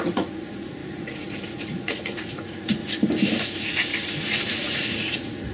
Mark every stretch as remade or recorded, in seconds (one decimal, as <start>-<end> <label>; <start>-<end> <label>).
0.0-2.8 remade; 2.8-3.4 recorded; 3.4-3.9 remade; 3.9-4.5 recorded; 4.5-5.5 remade